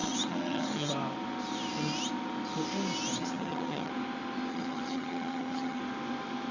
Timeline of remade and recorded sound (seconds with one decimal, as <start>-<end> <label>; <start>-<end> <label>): 0.0-0.9 remade; 0.9-3.2 recorded; 3.2-3.9 remade; 3.9-4.5 recorded; 4.5-5.8 remade; 5.8-6.5 recorded